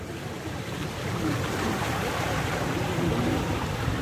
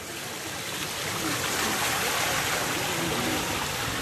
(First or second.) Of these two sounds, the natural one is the second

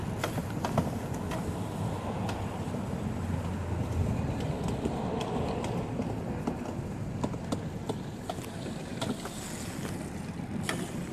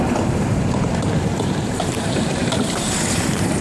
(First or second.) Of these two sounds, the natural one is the first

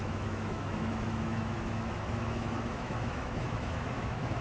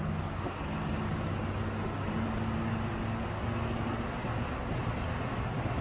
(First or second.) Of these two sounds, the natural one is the second